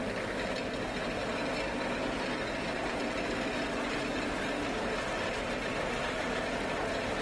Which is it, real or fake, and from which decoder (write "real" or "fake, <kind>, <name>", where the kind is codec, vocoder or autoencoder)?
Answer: real